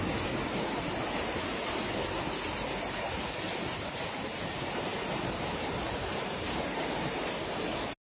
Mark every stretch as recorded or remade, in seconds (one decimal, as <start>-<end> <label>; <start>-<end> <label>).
0.0-8.1 recorded